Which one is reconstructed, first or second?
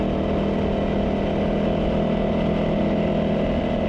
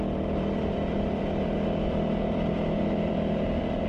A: second